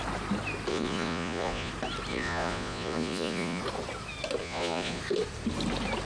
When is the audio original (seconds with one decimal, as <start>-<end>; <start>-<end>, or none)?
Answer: 0.0-0.7; 1.7-2.1; 3.6-4.4; 5.0-6.0